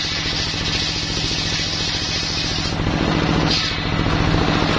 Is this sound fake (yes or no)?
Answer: no